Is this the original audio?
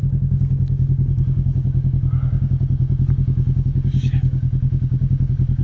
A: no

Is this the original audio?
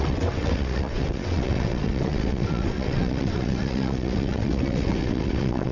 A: no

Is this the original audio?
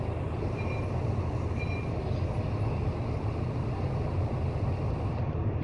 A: yes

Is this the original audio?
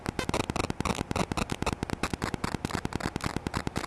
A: yes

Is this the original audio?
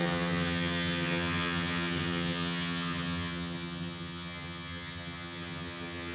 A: no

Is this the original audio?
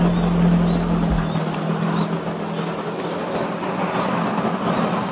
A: yes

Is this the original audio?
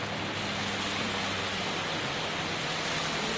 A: yes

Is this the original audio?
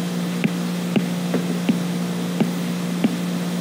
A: yes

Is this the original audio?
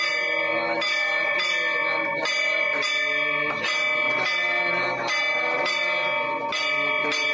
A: yes